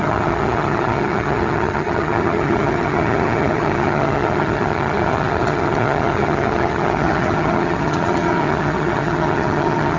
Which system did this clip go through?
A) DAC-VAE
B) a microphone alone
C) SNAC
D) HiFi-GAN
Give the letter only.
D